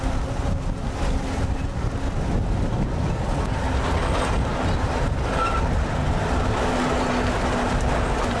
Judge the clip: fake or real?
real